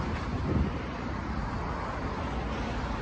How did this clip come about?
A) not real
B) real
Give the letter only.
B